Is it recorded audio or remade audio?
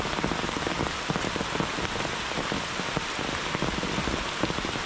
recorded